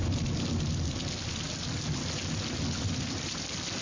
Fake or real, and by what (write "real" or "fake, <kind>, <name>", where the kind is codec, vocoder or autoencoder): real